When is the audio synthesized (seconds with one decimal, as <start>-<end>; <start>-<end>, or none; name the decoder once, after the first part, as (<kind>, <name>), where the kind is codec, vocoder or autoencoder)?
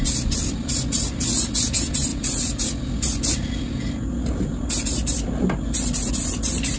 none